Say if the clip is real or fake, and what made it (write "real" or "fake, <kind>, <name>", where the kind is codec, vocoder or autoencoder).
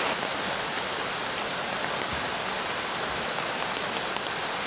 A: real